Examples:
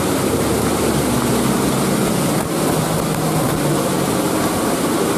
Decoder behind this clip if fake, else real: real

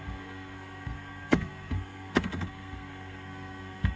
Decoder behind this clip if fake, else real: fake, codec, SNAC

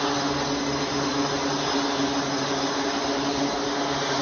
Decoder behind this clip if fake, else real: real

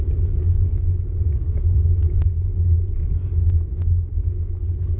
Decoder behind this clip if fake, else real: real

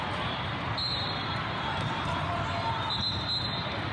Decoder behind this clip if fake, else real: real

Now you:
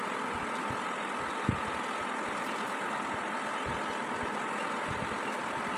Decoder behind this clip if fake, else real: real